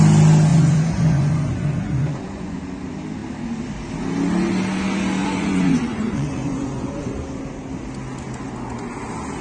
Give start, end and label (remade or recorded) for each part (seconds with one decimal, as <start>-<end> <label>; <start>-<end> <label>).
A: 0.0-0.5 recorded; 0.5-2.6 remade; 2.6-5.2 recorded; 5.2-7.1 remade; 7.1-9.4 recorded